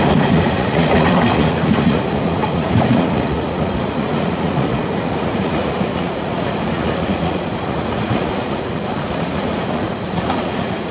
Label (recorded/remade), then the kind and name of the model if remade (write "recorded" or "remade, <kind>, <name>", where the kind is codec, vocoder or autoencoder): remade, vocoder, Vocos